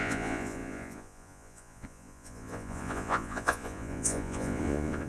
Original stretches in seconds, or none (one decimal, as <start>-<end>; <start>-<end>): none